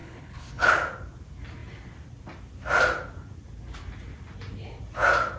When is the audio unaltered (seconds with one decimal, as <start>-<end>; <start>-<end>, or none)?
0.7-5.4